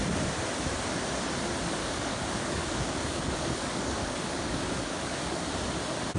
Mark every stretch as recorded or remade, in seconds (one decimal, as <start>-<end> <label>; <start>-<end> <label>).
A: 0.0-1.8 recorded; 1.8-5.5 remade; 5.5-6.2 recorded